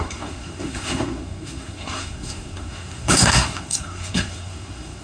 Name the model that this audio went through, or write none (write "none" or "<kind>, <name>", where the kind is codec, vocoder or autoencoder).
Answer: codec, SNAC